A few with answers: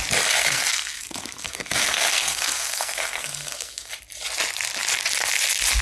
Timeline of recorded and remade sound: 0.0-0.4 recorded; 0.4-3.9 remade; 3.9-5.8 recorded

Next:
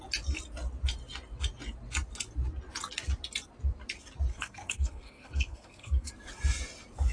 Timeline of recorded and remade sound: 0.0-4.3 recorded; 4.3-6.1 remade; 6.1-7.1 recorded

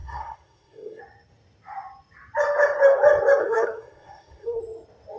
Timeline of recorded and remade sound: 0.0-1.0 remade; 1.0-3.4 recorded; 3.4-4.6 remade; 4.6-5.2 recorded

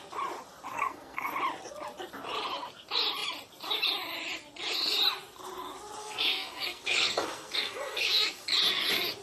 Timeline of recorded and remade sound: 0.0-0.7 recorded; 0.7-1.3 remade; 1.3-6.0 recorded; 6.0-8.5 remade; 8.5-9.2 recorded

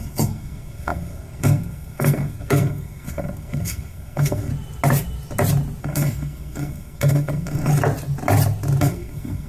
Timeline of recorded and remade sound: 0.0-4.5 remade; 4.5-5.8 recorded; 5.8-7.7 remade; 7.7-8.8 recorded; 8.8-9.5 remade